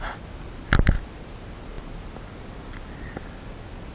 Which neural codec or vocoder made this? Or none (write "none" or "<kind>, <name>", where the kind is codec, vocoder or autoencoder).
none